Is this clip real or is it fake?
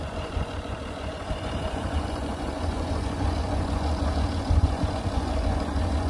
fake